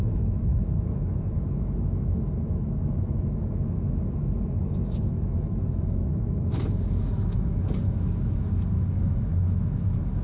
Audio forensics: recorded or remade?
remade